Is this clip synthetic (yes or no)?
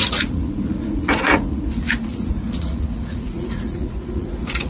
yes